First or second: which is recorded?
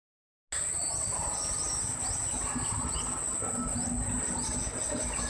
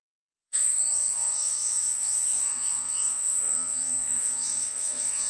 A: first